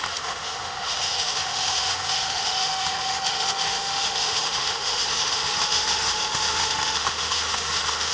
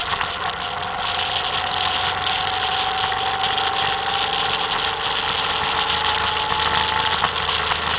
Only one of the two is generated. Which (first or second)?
first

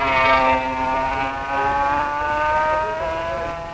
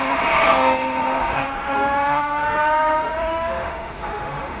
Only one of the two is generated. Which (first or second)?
second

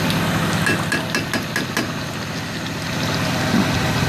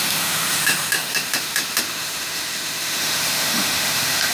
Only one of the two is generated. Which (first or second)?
second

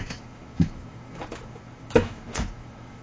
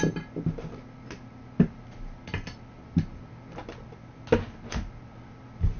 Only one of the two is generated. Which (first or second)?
first